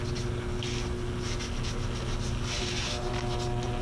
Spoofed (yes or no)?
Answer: no